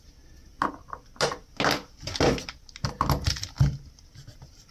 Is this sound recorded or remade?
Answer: recorded